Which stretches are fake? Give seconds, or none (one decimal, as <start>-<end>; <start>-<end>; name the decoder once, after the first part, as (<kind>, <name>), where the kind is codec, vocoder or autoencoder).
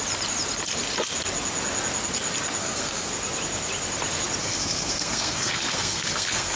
2.6-3.1 (codec, SNAC); 4.4-6.6